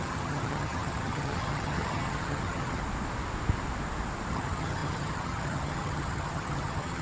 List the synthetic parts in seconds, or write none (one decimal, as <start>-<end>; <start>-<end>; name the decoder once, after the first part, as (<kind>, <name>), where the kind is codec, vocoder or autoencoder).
0.0-2.8 (vocoder, HiFi-GAN); 4.3-7.0